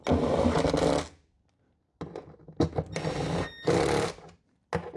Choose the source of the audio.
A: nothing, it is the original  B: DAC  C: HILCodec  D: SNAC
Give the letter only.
A